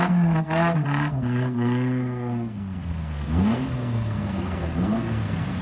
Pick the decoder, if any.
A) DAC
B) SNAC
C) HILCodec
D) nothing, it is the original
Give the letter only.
B